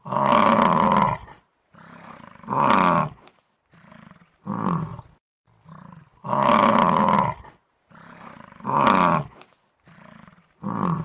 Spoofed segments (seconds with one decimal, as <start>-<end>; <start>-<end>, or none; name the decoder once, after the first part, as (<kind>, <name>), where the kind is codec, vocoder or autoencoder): 3.0-3.9 (vocoder, BigVGAN v2)